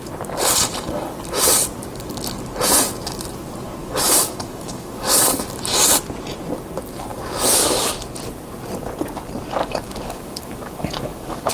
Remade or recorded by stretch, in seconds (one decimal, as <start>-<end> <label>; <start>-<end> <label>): 0.0-3.8 recorded; 3.8-5.2 remade; 5.2-7.1 recorded; 7.1-7.9 remade; 7.9-9.6 recorded; 9.6-11.5 remade